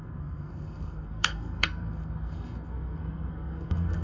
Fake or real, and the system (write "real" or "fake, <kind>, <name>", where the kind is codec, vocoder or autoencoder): fake, codec, SNAC